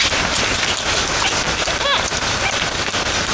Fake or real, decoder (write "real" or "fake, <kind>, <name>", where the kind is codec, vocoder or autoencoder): real